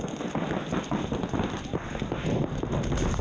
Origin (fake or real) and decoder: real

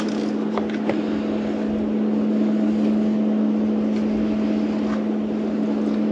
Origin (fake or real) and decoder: real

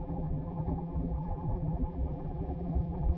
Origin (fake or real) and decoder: fake, vocoder, BigVGAN v2